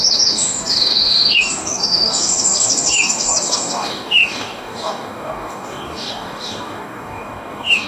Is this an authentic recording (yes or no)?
no